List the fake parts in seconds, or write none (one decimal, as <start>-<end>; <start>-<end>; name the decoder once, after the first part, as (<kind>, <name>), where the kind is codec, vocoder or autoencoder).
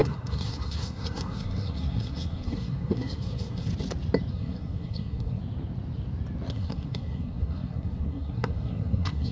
0.0-3.7 (codec, SNAC); 4.3-5.4; 6.5-9.3